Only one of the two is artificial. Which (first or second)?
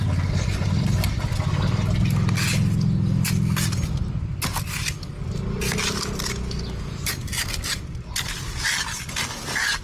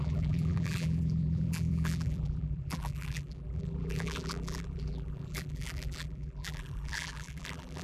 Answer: second